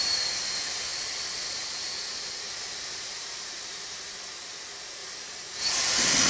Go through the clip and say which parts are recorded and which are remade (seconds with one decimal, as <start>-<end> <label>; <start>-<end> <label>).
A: 0.0-0.9 recorded; 0.9-4.1 remade; 4.1-5.0 recorded; 5.0-5.7 remade; 5.7-6.3 recorded